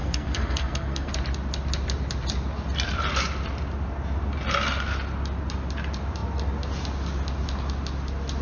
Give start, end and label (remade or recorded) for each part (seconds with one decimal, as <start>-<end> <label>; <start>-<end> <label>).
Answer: 0.0-1.1 remade; 1.1-8.4 recorded